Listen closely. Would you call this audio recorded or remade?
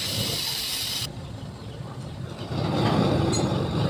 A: remade